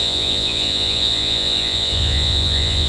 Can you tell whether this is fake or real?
fake